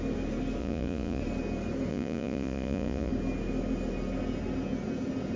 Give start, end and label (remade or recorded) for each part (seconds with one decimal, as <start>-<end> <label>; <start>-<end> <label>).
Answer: 0.0-0.6 recorded; 0.6-1.2 remade; 1.2-1.9 recorded; 1.9-3.1 remade; 3.1-5.4 recorded